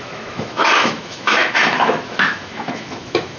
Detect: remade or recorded remade